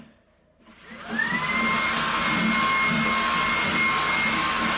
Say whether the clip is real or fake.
real